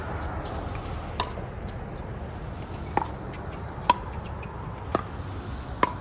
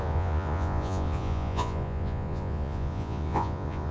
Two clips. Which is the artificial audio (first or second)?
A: second